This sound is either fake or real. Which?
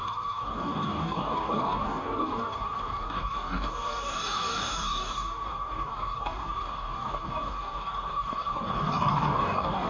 fake